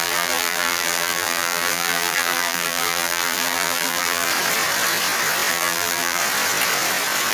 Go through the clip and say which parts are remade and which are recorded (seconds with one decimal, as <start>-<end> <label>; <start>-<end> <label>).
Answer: 0.0-4.3 remade; 4.3-5.5 recorded; 5.5-6.2 remade; 6.2-7.3 recorded